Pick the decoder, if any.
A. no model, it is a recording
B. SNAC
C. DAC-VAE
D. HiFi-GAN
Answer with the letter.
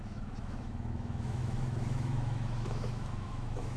C